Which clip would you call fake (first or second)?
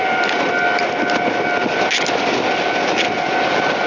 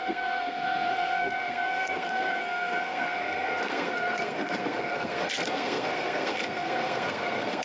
second